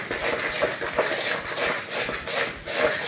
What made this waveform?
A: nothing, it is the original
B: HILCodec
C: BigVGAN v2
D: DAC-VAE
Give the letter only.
A